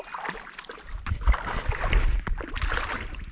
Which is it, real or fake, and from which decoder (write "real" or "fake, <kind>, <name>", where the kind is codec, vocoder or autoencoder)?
real